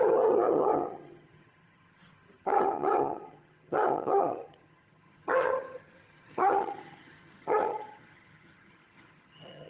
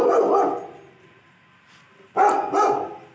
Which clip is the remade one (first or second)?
first